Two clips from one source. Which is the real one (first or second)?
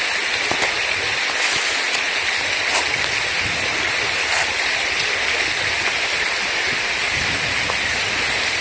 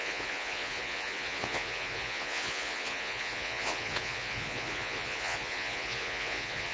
first